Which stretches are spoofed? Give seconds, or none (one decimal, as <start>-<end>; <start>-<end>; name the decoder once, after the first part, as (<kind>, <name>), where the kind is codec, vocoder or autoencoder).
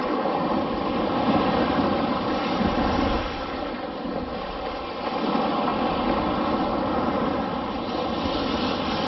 none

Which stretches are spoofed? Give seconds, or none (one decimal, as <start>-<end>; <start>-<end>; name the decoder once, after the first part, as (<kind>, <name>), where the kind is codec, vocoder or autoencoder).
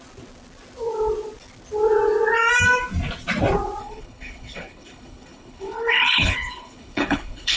3.8-7.6 (codec, HILCodec)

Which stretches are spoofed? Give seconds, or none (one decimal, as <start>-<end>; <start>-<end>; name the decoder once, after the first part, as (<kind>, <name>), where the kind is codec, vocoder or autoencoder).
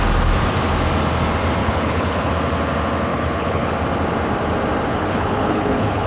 1.6-2.3 (codec, HILCodec); 3.1-3.7; 4.9-6.1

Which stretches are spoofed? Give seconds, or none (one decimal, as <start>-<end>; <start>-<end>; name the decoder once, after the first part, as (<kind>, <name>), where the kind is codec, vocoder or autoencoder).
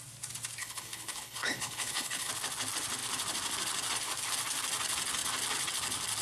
0.6-2.3 (codec, HILCodec)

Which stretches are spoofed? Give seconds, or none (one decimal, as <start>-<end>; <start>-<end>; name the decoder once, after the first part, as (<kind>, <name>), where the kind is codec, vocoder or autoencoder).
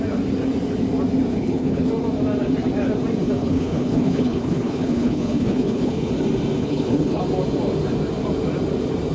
1.3-1.9 (codec, HILCodec); 3.4-6.1; 6.6-7.2